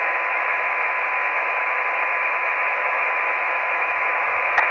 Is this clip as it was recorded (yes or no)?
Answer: no